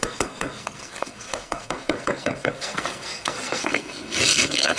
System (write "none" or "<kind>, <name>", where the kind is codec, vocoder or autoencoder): codec, SNAC